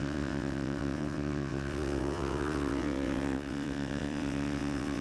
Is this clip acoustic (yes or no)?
no